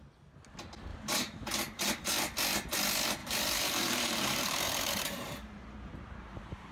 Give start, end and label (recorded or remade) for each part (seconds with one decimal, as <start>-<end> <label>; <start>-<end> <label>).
0.0-0.9 recorded; 0.9-2.1 remade; 2.1-3.2 recorded; 3.2-6.7 remade